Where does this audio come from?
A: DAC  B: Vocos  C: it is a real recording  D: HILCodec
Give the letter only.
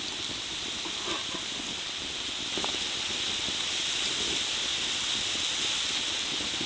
C